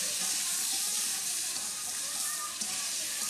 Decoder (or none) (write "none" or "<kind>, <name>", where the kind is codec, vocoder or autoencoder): vocoder, BigVGAN v2